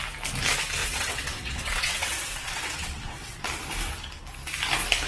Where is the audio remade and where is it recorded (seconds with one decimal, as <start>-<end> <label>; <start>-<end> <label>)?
0.0-0.8 recorded; 0.8-3.4 remade; 3.4-5.1 recorded